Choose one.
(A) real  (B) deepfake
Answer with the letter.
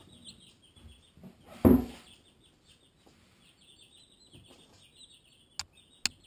A